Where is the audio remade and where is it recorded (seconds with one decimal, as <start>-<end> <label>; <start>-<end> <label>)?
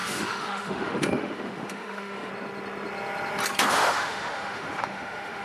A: 0.0-2.3 remade; 2.3-3.7 recorded; 3.7-5.4 remade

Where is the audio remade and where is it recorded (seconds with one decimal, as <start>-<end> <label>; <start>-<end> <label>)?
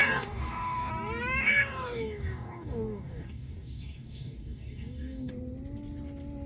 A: 0.0-0.9 remade; 0.9-1.4 recorded; 1.4-5.3 remade; 5.3-6.5 recorded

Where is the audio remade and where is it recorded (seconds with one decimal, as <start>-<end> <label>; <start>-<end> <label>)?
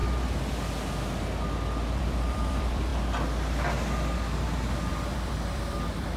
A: 0.0-1.4 recorded; 1.4-2.9 remade; 2.9-4.9 recorded; 4.9-6.2 remade